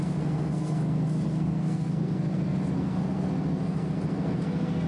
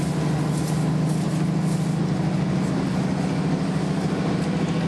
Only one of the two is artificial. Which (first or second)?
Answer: first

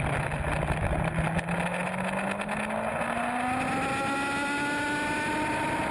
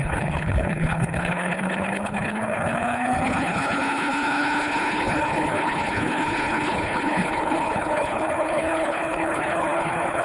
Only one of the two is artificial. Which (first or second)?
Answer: second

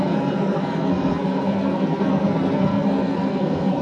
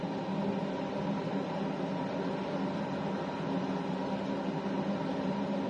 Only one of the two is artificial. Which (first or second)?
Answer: first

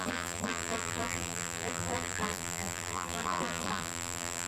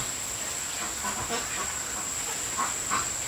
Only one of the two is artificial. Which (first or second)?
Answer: first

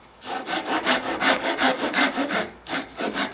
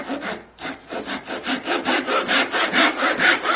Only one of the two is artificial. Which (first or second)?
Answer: first